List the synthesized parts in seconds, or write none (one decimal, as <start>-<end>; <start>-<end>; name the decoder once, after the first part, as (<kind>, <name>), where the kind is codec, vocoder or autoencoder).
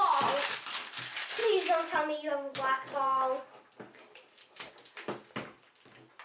1.4-4.7 (vocoder, BigVGAN v2)